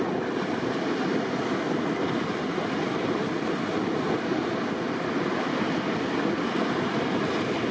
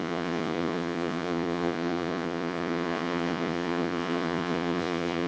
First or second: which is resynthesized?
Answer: second